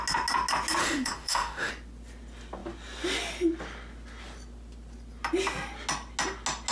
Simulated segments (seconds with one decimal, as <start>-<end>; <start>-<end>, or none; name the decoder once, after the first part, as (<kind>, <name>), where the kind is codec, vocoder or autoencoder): 0.8-1.7 (autoencoder, DAC-VAE)